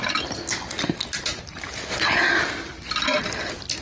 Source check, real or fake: real